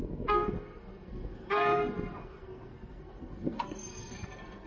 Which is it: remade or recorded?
remade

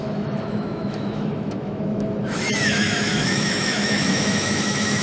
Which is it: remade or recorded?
remade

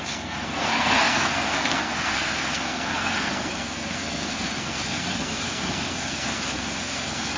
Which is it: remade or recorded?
remade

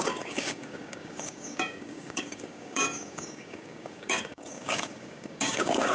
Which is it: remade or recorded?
remade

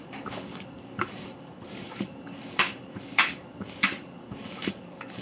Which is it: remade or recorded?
remade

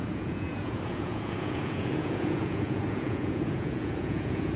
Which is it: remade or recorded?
remade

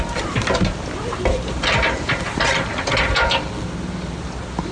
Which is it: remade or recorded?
recorded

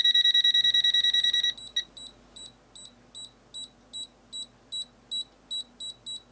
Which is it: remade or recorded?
recorded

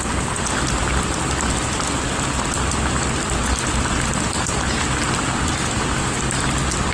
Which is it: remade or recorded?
recorded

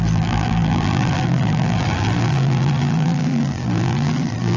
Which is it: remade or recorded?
remade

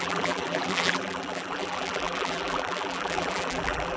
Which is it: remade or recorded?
remade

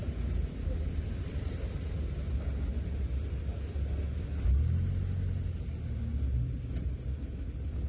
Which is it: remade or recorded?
recorded